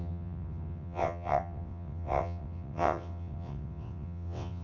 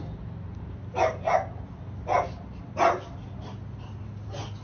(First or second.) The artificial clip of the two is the first